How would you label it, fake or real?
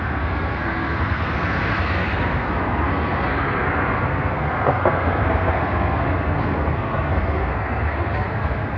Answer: fake